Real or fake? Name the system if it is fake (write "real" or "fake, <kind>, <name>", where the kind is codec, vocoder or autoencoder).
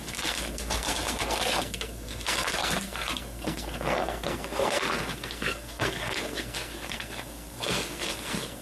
fake, codec, SNAC